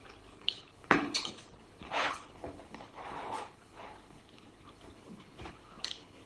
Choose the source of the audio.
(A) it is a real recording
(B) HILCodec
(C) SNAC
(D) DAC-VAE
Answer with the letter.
B